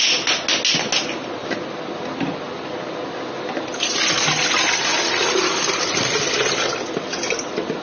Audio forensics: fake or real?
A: real